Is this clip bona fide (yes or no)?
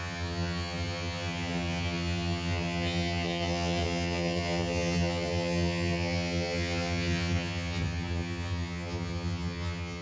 no